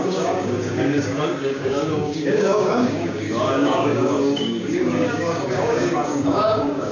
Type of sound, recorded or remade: remade